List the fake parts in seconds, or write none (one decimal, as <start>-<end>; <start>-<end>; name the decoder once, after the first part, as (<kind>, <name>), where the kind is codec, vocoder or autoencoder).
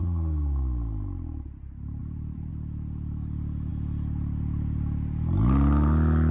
2.0-2.5 (vocoder, BigVGAN v2)